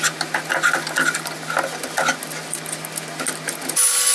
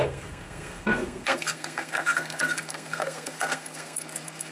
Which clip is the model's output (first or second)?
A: second